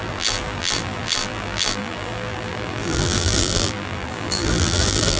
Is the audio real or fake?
fake